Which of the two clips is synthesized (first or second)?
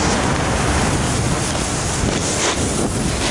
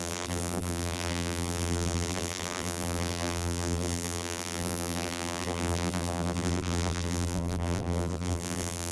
second